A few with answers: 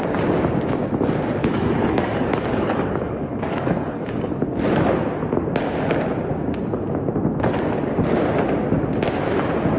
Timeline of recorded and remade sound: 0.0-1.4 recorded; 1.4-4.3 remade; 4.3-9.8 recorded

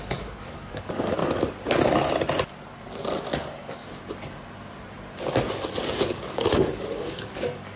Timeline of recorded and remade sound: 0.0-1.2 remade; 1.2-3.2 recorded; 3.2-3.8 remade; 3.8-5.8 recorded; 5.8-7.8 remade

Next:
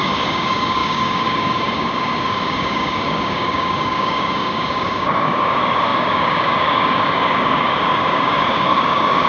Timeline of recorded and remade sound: 0.0-9.3 remade

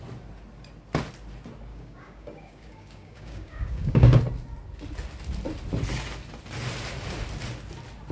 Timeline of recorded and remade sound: 0.0-1.7 recorded; 1.7-4.2 remade; 4.2-8.1 recorded